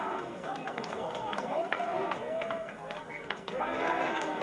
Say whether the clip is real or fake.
fake